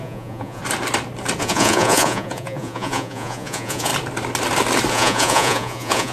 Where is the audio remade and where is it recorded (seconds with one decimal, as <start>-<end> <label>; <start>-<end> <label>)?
0.0-0.6 remade; 0.6-1.4 recorded; 1.4-3.9 remade; 3.9-4.9 recorded; 4.9-6.1 remade

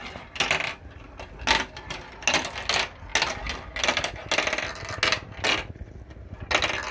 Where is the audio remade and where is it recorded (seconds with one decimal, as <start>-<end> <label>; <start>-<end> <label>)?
0.0-6.9 recorded

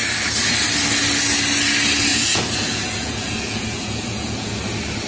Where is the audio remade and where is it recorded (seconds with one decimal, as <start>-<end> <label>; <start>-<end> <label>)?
0.0-2.1 recorded; 2.1-4.5 remade; 4.5-5.1 recorded

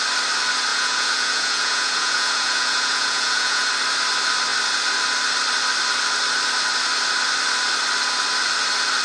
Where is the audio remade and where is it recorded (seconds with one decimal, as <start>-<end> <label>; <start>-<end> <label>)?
0.0-0.7 recorded; 0.7-3.7 remade; 3.7-9.0 recorded

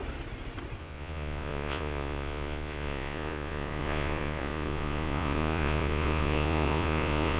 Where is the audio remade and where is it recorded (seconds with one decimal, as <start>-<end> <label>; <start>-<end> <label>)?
0.0-0.8 recorded; 0.8-7.4 remade

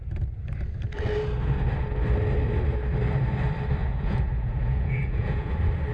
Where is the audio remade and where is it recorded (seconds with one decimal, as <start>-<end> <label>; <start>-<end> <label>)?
0.0-3.8 recorded; 3.8-5.5 remade; 5.5-5.9 recorded